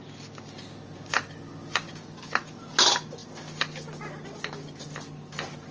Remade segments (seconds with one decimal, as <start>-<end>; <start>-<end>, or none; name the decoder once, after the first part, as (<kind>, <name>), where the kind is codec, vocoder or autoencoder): none